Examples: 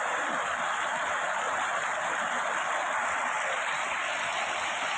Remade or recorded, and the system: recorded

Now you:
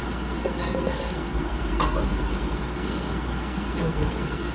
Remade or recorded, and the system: remade, codec, SNAC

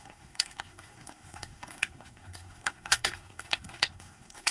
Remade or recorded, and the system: remade, codec, SNAC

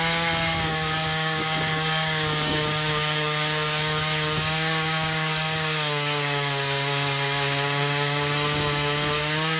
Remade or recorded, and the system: remade, codec, DAC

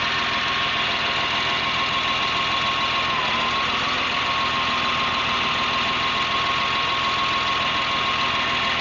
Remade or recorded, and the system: recorded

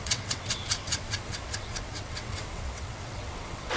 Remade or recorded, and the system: remade, vocoder, WaveNeXt